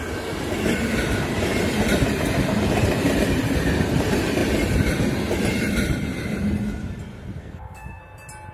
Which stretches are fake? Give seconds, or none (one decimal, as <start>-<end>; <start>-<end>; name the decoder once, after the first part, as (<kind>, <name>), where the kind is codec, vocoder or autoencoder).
7.4-8.0 (codec, SNAC)